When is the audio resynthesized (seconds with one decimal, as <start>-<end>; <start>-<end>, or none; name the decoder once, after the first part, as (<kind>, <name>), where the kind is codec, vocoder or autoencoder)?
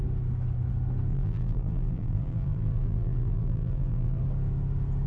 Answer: 1.1-4.2 (vocoder, BigVGAN v2)